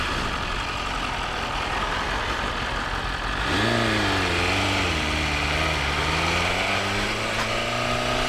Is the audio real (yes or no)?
yes